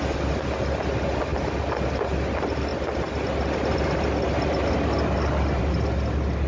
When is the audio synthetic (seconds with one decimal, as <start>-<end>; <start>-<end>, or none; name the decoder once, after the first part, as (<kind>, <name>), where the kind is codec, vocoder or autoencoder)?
none